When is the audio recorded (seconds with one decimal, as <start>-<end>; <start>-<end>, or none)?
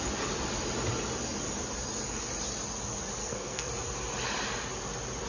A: 0.0-3.2; 3.7-5.3